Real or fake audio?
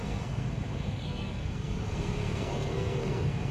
fake